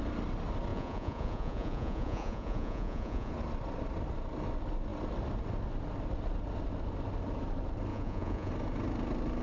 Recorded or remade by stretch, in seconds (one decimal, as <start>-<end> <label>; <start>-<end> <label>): 0.0-0.7 recorded; 0.7-3.3 remade; 3.3-7.9 recorded; 7.9-8.5 remade; 8.5-9.4 recorded